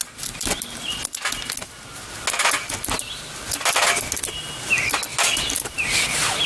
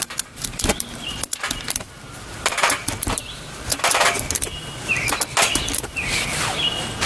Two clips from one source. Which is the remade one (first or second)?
second